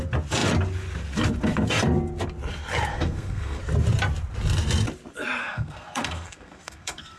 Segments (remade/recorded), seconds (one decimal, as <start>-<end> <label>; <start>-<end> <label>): 0.0-2.9 recorded; 2.9-3.6 remade; 3.6-5.4 recorded; 5.4-7.2 remade